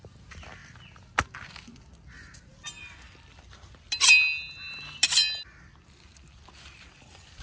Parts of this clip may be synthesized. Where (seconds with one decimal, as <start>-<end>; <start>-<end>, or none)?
none